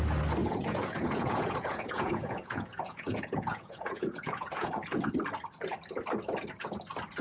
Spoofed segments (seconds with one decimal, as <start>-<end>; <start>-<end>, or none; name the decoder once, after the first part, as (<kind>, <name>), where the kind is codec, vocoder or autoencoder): 0.4-4.7 (vocoder, Vocos)